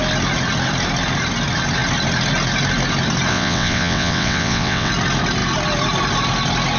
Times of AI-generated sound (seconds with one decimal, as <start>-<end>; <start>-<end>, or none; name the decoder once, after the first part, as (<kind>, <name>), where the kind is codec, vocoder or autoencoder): 3.3-4.9 (vocoder, WaveNeXt)